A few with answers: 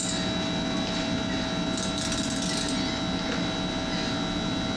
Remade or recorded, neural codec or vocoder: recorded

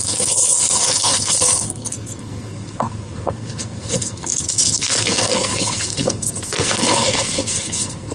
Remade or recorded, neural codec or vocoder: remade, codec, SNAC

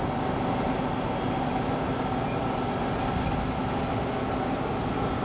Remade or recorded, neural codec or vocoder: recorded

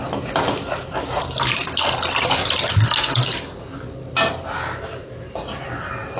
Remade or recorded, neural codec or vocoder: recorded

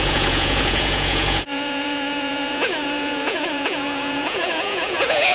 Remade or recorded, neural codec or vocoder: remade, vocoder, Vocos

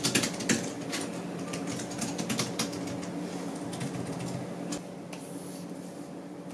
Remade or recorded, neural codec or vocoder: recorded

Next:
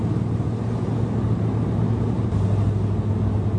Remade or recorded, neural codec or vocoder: recorded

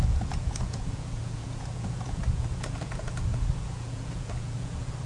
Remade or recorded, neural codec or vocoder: remade, vocoder, Vocos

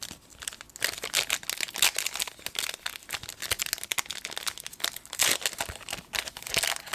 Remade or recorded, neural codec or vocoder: recorded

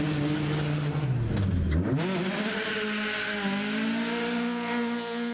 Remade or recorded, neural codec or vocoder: recorded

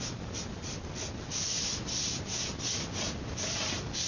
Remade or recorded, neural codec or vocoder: remade, vocoder, BigVGAN v2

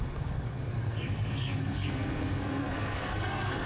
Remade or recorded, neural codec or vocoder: remade, codec, SNAC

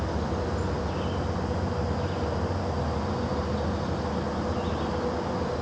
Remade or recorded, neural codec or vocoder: recorded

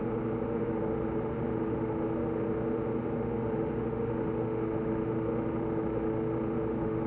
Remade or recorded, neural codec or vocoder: remade, autoencoder, DAC-VAE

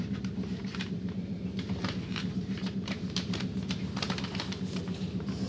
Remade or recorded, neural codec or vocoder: remade, vocoder, BigVGAN v2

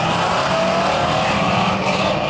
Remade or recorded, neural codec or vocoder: recorded